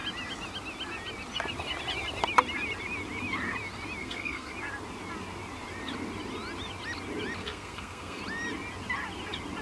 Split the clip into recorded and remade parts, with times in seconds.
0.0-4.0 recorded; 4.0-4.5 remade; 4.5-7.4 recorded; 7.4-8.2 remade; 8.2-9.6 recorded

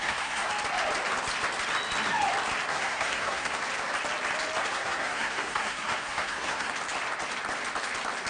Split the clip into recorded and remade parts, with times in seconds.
0.0-0.5 remade; 0.5-2.7 recorded; 2.7-3.6 remade; 3.6-4.6 recorded; 4.6-6.7 remade; 6.7-8.3 recorded

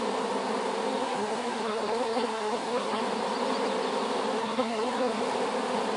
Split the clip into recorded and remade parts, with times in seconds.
0.0-1.0 recorded; 1.0-3.0 remade; 3.0-4.4 recorded; 4.4-5.2 remade; 5.2-6.0 recorded